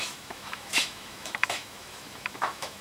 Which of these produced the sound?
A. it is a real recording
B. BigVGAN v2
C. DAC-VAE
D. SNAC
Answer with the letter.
C